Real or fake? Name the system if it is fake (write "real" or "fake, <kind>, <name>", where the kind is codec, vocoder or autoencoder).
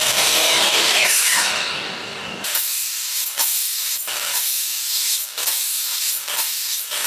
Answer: fake, codec, DAC